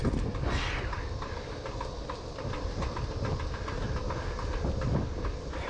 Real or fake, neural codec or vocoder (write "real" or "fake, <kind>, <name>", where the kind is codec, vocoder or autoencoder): real